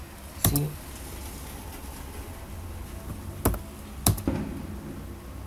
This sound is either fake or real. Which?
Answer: real